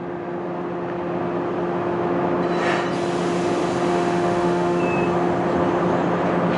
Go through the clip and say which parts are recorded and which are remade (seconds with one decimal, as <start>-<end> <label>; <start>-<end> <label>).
0.0-3.9 recorded; 3.9-4.8 remade; 4.8-6.6 recorded